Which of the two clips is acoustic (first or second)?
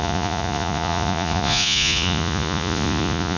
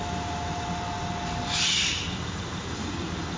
second